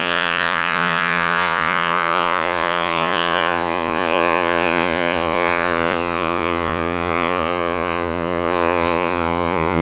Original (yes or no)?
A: no